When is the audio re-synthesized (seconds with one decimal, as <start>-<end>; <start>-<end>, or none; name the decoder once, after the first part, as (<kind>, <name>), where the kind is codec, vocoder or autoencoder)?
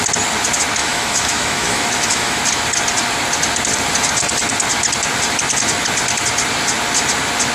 0.8-2.4 (autoencoder, DAC-VAE)